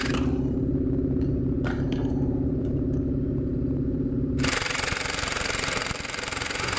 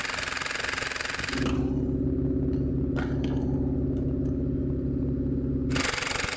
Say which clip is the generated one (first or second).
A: first